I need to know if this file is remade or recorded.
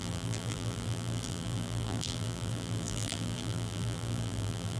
remade